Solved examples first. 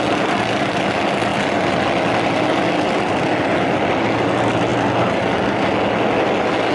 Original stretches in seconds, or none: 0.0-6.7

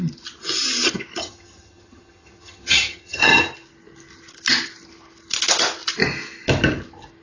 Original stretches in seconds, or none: 0.0-1.2; 3.4-7.2

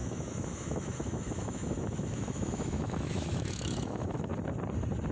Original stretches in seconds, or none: 4.3-5.1

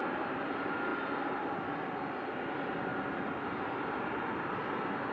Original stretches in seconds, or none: 0.0-5.1

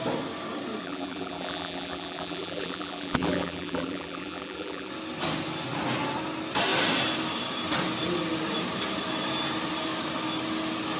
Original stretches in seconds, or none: 0.0-0.8; 4.9-11.0

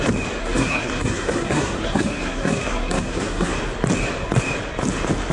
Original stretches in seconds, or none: 0.0-0.4; 3.6-5.3